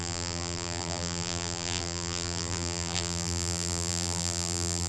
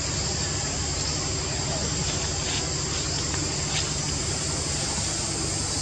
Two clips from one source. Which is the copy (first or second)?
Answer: first